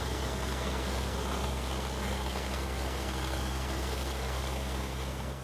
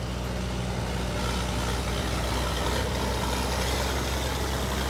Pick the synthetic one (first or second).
first